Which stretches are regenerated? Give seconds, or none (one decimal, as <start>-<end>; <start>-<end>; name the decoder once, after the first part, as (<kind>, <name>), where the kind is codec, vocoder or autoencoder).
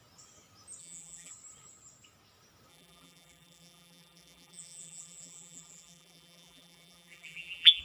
0.8-1.3 (vocoder, BigVGAN v2); 2.7-7.8